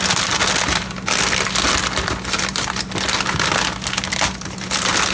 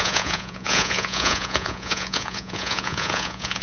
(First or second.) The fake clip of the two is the second